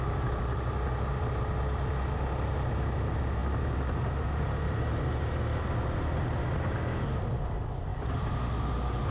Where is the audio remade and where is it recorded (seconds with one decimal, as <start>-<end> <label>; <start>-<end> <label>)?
0.0-9.1 recorded